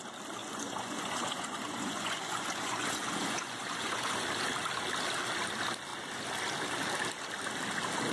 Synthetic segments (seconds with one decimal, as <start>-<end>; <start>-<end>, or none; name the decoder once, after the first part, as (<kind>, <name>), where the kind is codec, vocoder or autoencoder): 0.4-4.2 (vocoder, Vocos)